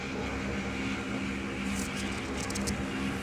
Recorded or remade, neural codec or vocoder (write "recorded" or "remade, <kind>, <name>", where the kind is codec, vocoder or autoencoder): recorded